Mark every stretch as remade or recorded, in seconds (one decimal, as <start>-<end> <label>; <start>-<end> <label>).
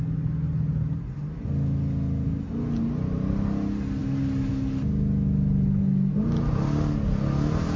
0.0-7.8 recorded